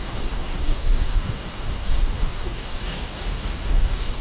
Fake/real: fake